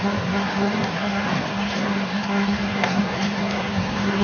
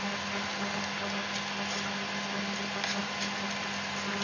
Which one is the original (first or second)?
second